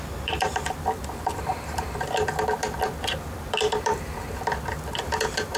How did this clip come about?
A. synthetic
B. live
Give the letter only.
A